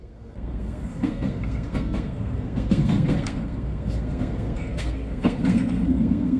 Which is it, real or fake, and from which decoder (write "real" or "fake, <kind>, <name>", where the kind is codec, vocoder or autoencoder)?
fake, codec, SNAC